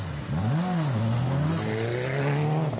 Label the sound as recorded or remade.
recorded